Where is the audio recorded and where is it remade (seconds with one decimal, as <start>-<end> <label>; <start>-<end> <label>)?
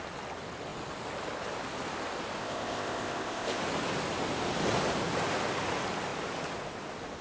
0.0-2.4 recorded; 2.4-3.6 remade; 3.6-7.2 recorded